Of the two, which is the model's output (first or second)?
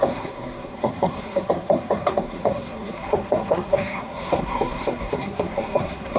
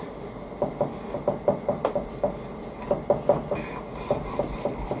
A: first